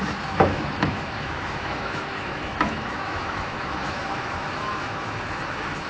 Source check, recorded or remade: remade